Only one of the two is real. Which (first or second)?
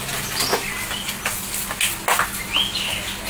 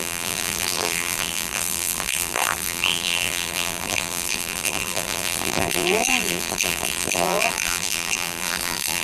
first